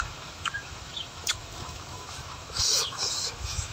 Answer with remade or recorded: remade